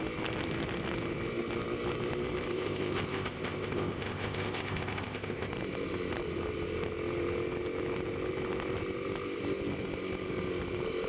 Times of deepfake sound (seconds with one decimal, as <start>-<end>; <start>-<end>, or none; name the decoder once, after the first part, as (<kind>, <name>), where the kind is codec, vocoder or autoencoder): 2.5-5.5 (codec, ZipCodec)

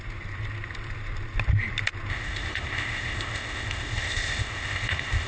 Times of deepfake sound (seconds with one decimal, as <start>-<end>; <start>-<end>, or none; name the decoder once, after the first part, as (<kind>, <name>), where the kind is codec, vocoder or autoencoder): 2.1-5.3 (codec, ZipCodec)

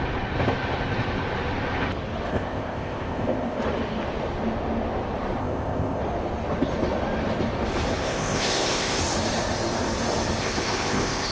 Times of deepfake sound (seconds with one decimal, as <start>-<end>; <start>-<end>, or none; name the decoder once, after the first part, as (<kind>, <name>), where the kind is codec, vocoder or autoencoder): 2.3-3.6 (codec, ZipCodec); 5.4-6.0; 8.0-9.0; 10.4-11.3